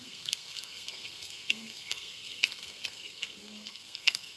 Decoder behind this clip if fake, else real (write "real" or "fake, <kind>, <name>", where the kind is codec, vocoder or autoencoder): fake, codec, SNAC